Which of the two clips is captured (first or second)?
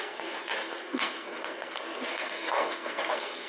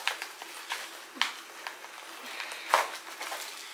second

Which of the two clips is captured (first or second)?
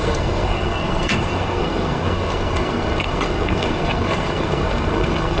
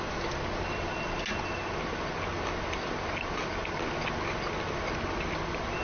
second